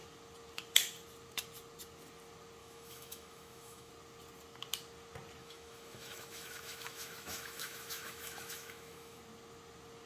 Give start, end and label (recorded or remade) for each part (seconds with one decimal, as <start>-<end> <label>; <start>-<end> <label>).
0.0-2.6 recorded; 2.6-3.9 remade; 3.9-5.4 recorded; 5.4-9.2 remade; 9.2-10.1 recorded